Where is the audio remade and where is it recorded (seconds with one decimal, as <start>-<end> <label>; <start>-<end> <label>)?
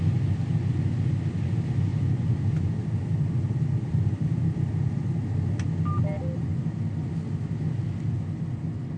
0.0-1.9 recorded; 1.9-5.2 remade; 5.2-9.0 recorded